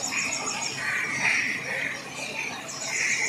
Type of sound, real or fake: real